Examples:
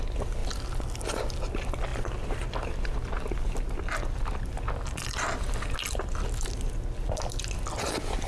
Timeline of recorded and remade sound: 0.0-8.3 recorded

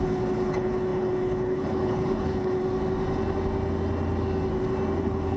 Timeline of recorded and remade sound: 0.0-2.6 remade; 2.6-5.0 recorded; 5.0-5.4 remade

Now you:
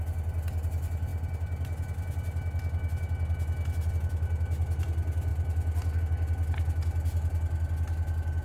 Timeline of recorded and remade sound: 0.0-8.4 recorded

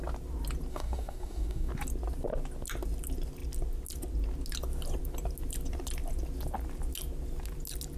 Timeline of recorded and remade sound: 0.0-0.7 recorded; 0.7-1.7 remade; 1.7-8.0 recorded

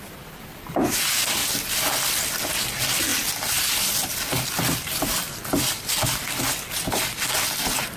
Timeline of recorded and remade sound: 0.0-3.1 recorded; 3.1-6.4 remade; 6.4-8.0 recorded